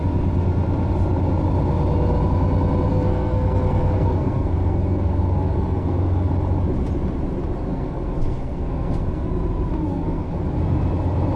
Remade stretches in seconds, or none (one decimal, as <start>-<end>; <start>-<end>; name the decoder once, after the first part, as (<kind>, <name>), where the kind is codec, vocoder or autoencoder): 2.9-6.3 (codec, SNAC); 7.7-9.3; 9.9-10.4